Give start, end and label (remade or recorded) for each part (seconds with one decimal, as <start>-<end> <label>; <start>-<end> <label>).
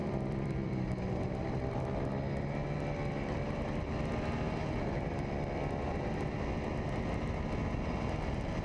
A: 0.0-0.7 remade; 0.7-8.6 recorded